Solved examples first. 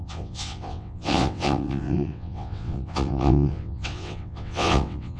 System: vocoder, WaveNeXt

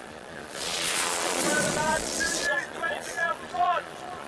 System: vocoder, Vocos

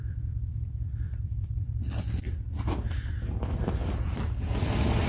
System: none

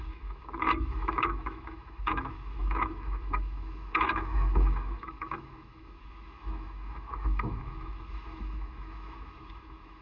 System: autoencoder, DAC-VAE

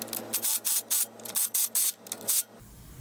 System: none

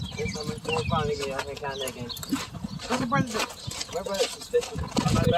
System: none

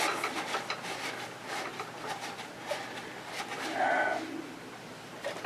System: none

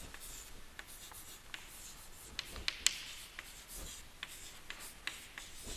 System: none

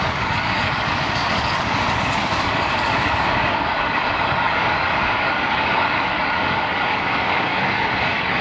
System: codec, DAC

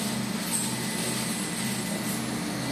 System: none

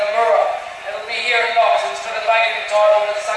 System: none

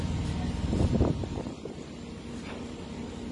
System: none